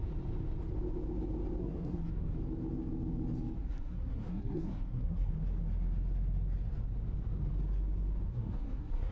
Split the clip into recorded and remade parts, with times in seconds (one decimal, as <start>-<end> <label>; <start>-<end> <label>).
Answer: 0.0-1.6 recorded; 1.6-2.1 remade; 2.1-3.6 recorded; 3.6-5.3 remade; 5.3-8.3 recorded; 8.3-9.1 remade